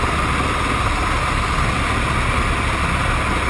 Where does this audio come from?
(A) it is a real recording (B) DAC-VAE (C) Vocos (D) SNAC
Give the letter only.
A